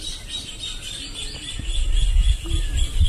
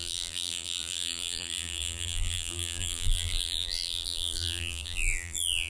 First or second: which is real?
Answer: first